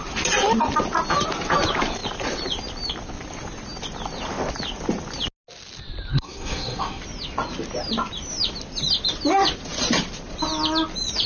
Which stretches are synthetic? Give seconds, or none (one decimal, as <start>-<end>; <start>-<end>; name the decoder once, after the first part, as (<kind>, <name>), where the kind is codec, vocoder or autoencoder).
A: 6.1-7.0 (codec, SNAC)